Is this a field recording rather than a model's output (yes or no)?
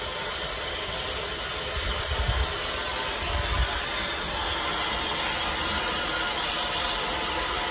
yes